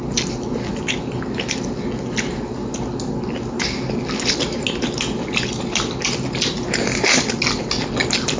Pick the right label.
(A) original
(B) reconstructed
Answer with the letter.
A